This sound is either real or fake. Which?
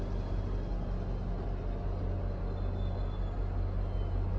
real